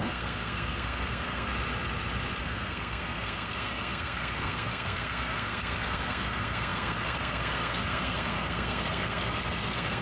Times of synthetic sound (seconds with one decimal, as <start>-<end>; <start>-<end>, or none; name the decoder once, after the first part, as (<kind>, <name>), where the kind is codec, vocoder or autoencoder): 0.0-1.5 (codec, SNAC); 2.4-10.0